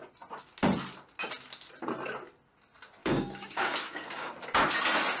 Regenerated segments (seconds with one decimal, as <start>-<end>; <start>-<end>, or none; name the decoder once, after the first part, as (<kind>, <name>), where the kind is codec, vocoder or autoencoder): 3.0-4.4 (codec, DAC)